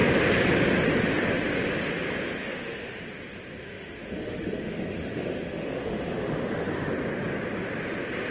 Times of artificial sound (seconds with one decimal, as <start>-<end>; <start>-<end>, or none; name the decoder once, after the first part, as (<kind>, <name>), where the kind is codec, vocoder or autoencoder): 2.4-3.0 (autoencoder, DAC-VAE); 3.6-6.9